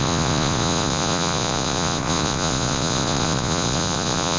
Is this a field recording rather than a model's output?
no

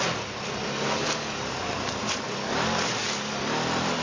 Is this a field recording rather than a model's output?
yes